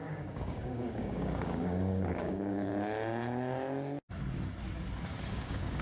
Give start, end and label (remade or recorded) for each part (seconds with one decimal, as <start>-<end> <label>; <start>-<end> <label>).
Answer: 0.0-2.7 remade; 2.7-5.3 recorded; 5.3-5.8 remade